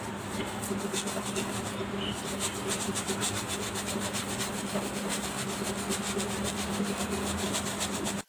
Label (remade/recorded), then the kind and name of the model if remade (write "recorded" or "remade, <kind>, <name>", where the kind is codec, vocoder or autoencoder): recorded